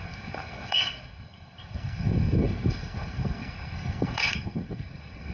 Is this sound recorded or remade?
remade